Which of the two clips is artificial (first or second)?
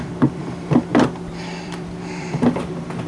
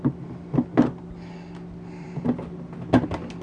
first